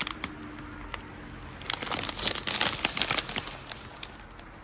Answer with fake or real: real